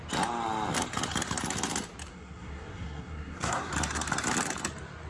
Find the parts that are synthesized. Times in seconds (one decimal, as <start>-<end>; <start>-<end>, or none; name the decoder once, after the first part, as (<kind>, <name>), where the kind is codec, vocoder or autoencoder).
2.1-3.7 (codec, SNAC)